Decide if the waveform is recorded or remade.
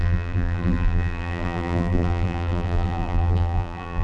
remade